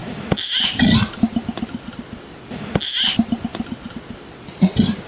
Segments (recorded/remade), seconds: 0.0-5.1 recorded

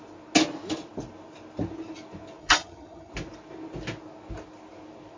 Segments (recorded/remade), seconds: 0.0-2.4 recorded; 2.4-3.1 remade; 3.1-5.2 recorded